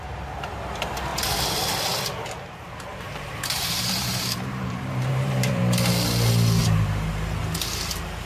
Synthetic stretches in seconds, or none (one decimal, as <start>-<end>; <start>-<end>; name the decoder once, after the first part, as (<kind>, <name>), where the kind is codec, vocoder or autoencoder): 2.9-5.6 (vocoder, BigVGAN v2); 6.6-7.4